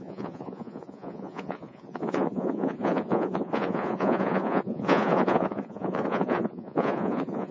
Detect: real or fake fake